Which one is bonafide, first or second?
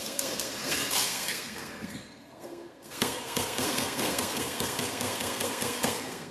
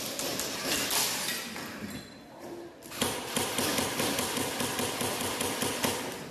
second